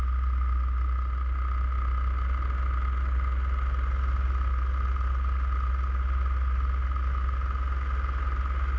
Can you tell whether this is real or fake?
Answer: real